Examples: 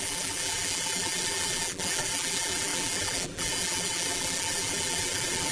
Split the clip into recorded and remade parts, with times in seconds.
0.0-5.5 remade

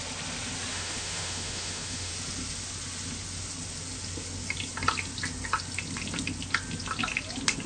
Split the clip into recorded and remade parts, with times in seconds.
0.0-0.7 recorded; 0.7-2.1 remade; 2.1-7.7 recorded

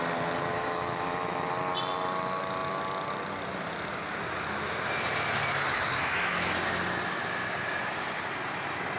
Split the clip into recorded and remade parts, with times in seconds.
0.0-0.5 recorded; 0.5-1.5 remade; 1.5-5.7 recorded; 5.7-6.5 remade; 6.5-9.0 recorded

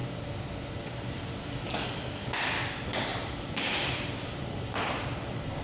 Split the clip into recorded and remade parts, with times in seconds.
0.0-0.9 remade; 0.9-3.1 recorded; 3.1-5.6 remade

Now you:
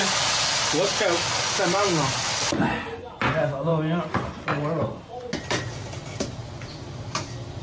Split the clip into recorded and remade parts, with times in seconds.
0.0-7.6 recorded

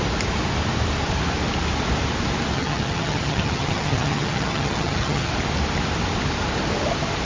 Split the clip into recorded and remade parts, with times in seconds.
0.0-2.5 recorded; 2.5-5.3 remade; 5.3-7.2 recorded